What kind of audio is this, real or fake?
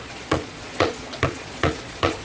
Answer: fake